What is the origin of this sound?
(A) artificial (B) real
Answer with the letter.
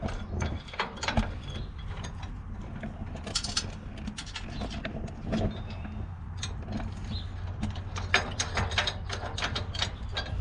B